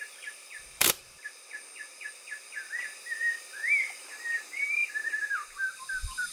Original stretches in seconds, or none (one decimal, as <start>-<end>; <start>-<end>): 1.0-3.0